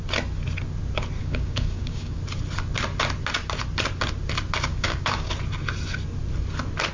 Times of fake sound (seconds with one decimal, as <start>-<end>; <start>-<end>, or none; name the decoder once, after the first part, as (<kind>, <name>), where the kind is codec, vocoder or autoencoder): 1.2-2.2 (codec, DAC); 4.7-5.3